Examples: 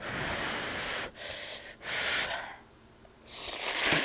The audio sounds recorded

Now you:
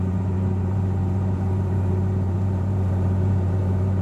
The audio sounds remade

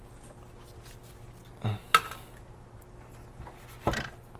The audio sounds recorded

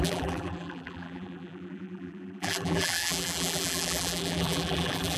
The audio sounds remade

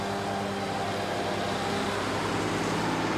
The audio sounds recorded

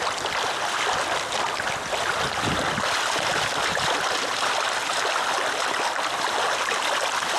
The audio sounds recorded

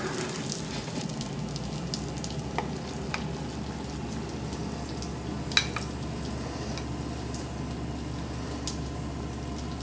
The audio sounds recorded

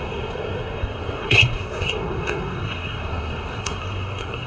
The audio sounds remade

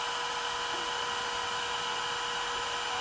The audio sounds recorded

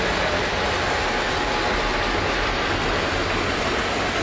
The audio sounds recorded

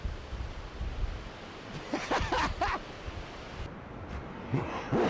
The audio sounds recorded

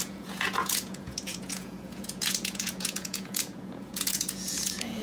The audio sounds remade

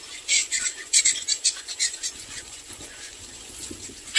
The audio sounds remade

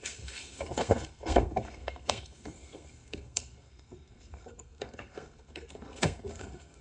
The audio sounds remade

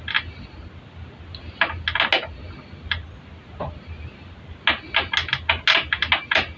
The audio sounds recorded